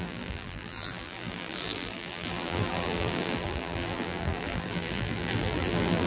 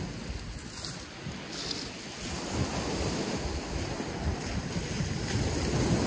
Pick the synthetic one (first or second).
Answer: first